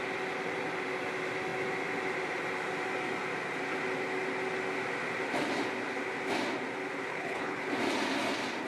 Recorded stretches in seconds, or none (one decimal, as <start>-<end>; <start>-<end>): 0.0-7.1; 7.7-8.7